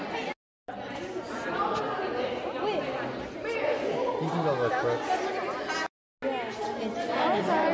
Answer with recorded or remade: recorded